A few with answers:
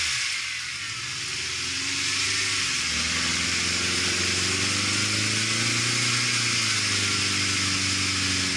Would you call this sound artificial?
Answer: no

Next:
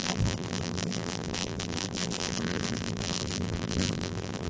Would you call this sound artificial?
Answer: yes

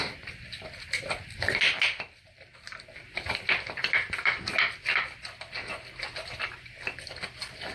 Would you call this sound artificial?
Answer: no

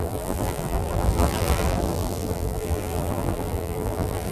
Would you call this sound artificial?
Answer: yes